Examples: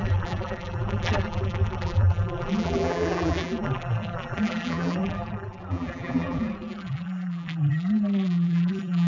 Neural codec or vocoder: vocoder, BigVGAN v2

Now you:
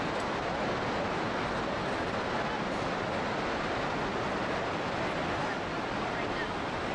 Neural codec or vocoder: none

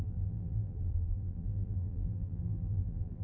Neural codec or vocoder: vocoder, BigVGAN v2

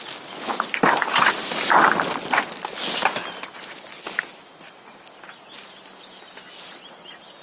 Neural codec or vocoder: none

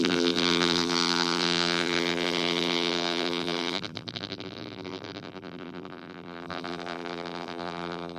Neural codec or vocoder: vocoder, BigVGAN v2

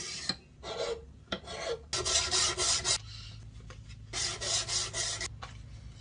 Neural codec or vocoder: none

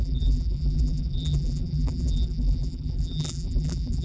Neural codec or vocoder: vocoder, BigVGAN v2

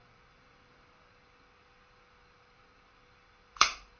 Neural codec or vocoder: vocoder, BigVGAN v2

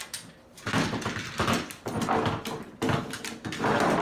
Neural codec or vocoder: none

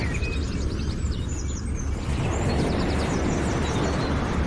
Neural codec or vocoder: none